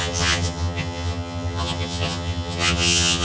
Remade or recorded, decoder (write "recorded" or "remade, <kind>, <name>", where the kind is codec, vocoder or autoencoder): remade, vocoder, HiFi-GAN